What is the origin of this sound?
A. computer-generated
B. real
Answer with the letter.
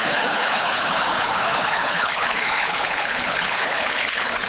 A